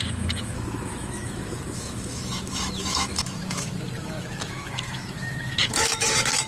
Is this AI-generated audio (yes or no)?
yes